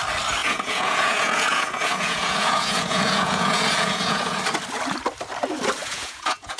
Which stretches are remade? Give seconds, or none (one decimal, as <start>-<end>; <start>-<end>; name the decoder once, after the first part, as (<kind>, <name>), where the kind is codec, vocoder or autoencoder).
0.4-4.4 (vocoder, Vocos); 5.8-6.6